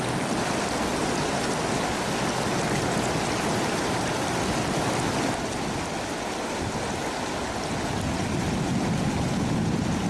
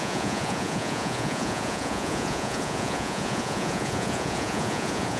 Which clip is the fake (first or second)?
second